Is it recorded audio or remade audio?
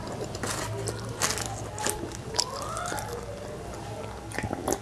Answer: recorded